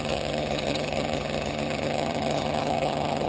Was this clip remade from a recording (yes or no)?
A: yes